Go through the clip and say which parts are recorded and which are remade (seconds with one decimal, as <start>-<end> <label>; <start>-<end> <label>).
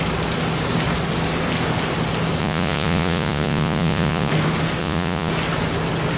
0.0-2.4 recorded; 2.4-4.3 remade; 4.3-4.8 recorded; 4.8-5.3 remade; 5.3-6.2 recorded